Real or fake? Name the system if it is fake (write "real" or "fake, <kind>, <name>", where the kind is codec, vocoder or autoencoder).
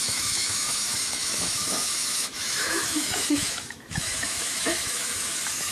fake, autoencoder, DAC-VAE